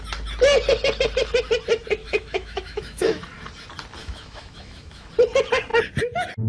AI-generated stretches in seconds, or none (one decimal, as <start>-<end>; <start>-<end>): 2.0-3.2; 4.0-5.1